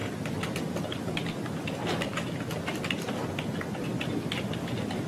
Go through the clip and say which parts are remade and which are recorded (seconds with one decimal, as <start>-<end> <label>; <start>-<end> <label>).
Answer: 0.0-3.9 recorded; 3.9-4.6 remade; 4.6-5.1 recorded